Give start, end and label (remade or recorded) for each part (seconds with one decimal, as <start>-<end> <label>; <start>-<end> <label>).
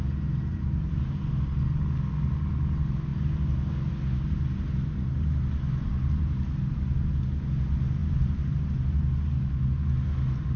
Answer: 0.0-0.5 recorded; 0.5-1.2 remade; 1.2-8.0 recorded; 8.0-8.5 remade; 8.5-10.6 recorded